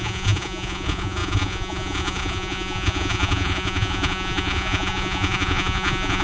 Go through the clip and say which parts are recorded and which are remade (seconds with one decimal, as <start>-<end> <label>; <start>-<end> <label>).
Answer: 0.0-6.2 remade